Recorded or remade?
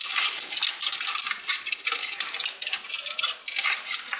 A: recorded